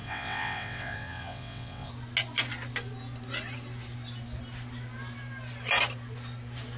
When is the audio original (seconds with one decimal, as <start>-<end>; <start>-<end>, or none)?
1.9-6.8

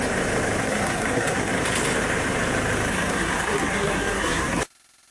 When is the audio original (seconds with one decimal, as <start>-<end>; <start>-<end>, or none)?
0.0-0.6; 1.5-2.9; 4.6-5.1